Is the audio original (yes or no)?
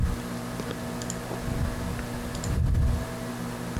yes